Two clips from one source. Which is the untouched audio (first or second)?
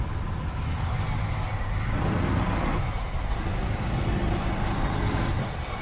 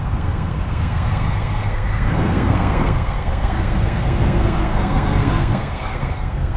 first